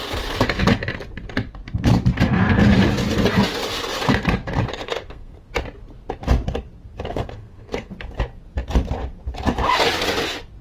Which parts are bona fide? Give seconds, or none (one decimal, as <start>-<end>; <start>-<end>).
0.0-4.8; 5.5-7.1; 7.9-10.6